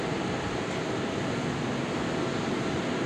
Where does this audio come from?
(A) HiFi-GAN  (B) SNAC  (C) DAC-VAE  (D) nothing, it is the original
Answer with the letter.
D